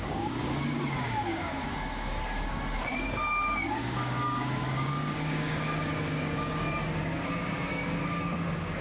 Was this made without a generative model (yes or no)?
no